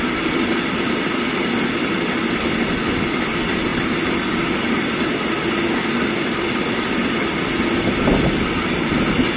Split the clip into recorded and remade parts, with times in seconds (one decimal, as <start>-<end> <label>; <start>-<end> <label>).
0.0-9.4 recorded